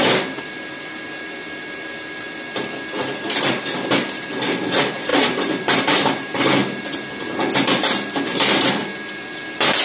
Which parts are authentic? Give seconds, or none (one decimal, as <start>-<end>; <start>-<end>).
6.6-8.7